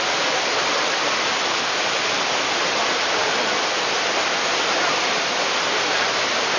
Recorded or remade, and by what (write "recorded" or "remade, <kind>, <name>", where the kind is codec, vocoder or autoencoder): remade, vocoder, BigVGAN v2